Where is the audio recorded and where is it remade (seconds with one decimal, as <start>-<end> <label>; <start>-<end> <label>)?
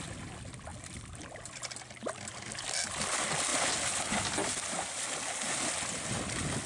0.0-6.7 recorded